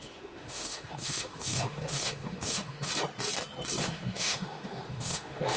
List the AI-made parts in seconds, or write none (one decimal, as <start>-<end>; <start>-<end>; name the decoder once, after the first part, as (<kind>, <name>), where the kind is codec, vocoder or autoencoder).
0.0-2.9 (autoencoder, DAC-VAE); 3.8-5.6